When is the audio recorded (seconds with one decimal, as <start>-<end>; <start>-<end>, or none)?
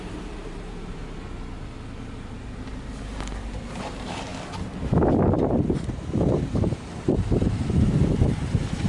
1.0-3.8; 4.3-5.1